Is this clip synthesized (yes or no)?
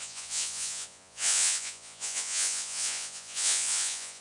yes